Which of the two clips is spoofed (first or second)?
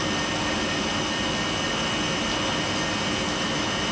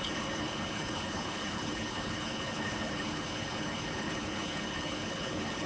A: second